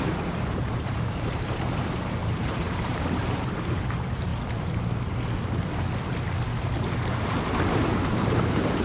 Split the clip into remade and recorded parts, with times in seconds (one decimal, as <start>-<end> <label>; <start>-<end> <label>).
0.0-4.3 remade; 4.3-8.1 recorded; 8.1-8.8 remade